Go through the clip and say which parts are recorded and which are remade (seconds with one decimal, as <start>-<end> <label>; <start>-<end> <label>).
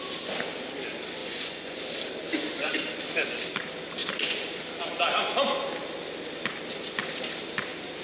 0.0-1.2 recorded; 1.2-1.8 remade; 1.8-4.0 recorded; 4.0-4.6 remade; 4.6-8.0 recorded